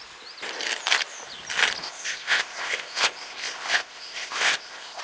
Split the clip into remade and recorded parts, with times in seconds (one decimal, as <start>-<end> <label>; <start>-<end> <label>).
0.0-1.8 recorded; 1.8-5.0 remade